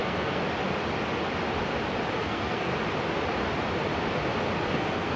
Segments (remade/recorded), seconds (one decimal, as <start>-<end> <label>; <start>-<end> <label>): 0.0-0.4 remade; 0.4-2.2 recorded; 2.2-2.7 remade; 2.7-4.7 recorded; 4.7-5.2 remade